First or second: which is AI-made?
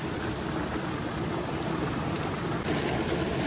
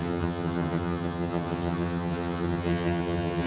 second